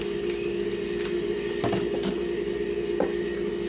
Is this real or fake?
real